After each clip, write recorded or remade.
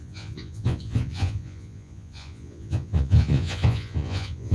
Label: remade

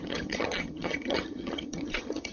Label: remade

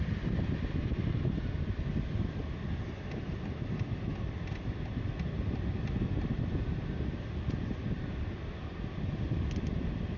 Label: recorded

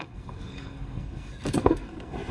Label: remade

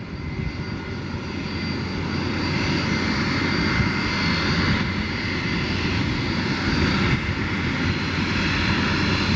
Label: recorded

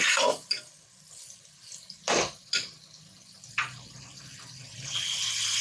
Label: recorded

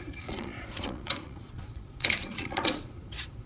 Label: remade